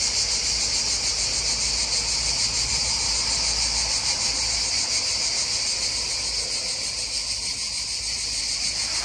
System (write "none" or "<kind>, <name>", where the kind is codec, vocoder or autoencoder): none